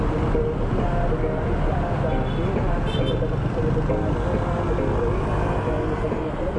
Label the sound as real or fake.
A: real